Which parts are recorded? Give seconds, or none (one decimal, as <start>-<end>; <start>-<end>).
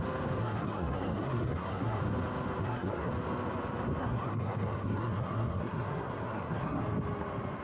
0.0-0.4; 2.0-2.6; 3.1-4.0; 6.8-7.6